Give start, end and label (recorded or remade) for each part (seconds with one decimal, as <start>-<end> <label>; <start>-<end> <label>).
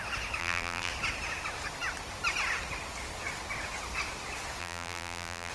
0.0-0.4 recorded; 0.4-0.9 remade; 0.9-4.6 recorded; 4.6-5.5 remade